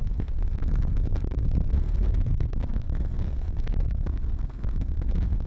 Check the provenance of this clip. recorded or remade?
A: remade